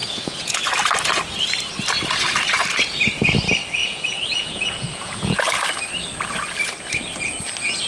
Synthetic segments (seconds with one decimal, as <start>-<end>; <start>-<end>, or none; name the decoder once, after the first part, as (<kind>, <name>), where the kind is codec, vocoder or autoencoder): 0.0-0.6 (vocoder, Vocos); 3.8-5.4